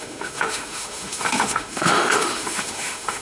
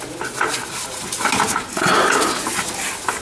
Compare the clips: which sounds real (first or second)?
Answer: second